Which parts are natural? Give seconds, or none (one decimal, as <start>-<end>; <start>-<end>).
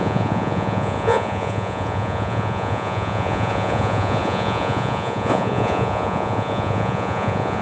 none